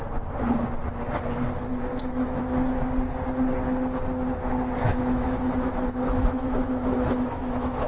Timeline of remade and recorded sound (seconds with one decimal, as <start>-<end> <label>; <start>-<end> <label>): 0.0-1.7 recorded; 1.7-2.4 remade; 2.4-4.8 recorded; 4.8-7.9 remade